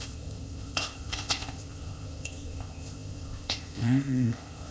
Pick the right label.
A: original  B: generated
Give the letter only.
B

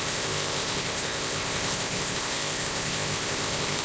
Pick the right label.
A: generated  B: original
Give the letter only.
A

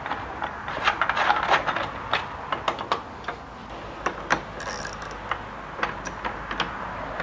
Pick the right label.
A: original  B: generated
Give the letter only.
A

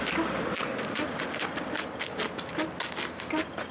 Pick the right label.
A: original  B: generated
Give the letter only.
A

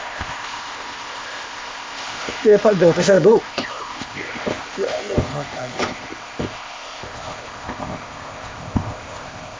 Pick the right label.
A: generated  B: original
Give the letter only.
A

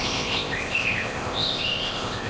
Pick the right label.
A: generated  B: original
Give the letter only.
A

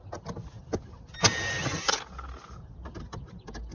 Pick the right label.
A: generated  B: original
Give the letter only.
B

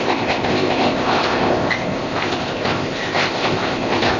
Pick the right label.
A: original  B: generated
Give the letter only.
B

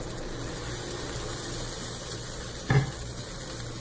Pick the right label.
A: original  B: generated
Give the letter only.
A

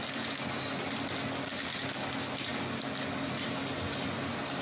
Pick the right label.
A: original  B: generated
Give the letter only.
A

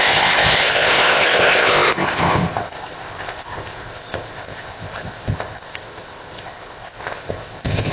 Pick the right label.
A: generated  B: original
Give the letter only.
A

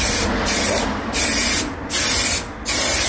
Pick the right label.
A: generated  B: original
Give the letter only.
B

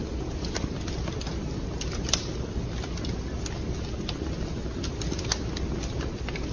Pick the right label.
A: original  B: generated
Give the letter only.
A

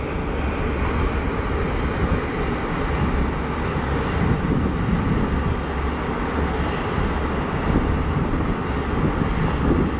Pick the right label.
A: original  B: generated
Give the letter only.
A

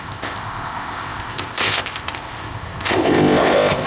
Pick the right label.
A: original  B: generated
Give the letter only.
B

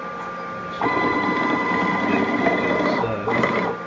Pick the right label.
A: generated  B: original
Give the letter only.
B